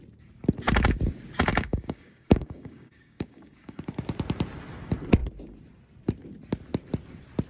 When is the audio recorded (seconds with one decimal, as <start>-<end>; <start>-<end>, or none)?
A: 0.0-1.5; 3.8-7.5